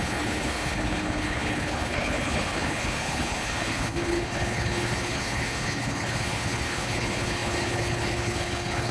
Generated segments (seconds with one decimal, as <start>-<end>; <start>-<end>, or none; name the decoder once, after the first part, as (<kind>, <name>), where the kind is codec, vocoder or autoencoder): 0.0-8.9 (codec, HILCodec)